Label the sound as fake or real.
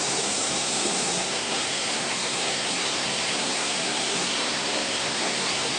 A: fake